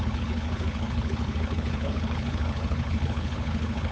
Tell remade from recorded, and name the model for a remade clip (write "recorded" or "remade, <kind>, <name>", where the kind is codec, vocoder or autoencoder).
remade, codec, HILCodec